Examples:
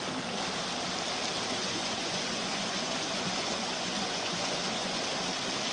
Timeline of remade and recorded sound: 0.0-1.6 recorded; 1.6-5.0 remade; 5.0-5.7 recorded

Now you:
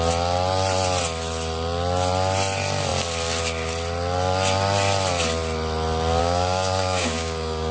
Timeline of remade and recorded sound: 0.0-6.2 recorded; 6.2-7.7 remade